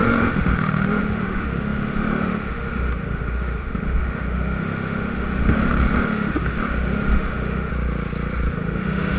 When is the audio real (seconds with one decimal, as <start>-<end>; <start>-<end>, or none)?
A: 7.7-8.5